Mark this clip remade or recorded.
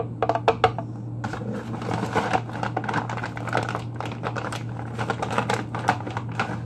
recorded